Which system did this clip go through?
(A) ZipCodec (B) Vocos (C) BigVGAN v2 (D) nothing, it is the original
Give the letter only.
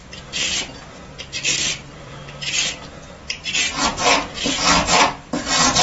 C